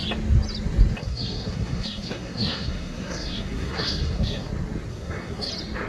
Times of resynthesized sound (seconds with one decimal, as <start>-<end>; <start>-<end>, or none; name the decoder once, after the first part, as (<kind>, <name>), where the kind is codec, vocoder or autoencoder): 1.0-4.5 (codec, SNAC); 4.9-5.5